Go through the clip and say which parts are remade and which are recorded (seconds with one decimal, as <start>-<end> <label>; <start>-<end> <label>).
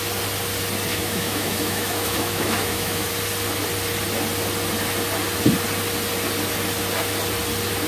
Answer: 0.0-0.9 recorded; 0.9-3.1 remade; 3.1-7.9 recorded